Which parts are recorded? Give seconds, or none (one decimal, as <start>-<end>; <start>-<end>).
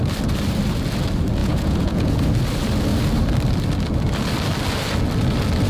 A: 0.0-1.4; 2.1-5.7